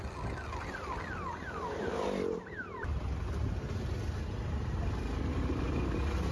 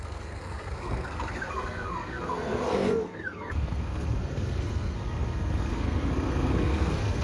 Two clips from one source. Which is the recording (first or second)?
first